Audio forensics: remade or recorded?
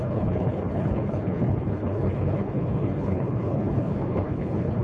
remade